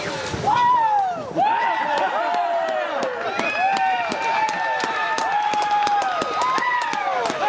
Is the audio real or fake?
real